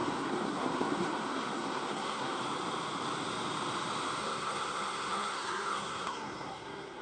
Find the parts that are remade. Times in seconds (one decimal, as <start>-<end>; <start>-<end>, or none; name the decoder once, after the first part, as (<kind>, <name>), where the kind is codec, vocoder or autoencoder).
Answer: 0.0-2.4 (codec, SNAC); 4.2-7.0